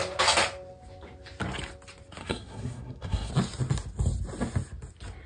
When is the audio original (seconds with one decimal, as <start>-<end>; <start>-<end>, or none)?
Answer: 0.0-2.2; 3.3-5.3